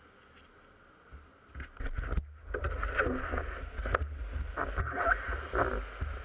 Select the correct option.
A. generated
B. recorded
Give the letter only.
B